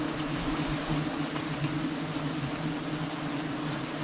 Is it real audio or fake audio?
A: real